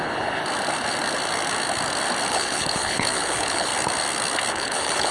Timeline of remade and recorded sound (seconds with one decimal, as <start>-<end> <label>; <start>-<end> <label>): 0.0-0.4 remade; 0.4-2.3 recorded; 2.3-3.7 remade; 3.7-4.5 recorded; 4.5-5.1 remade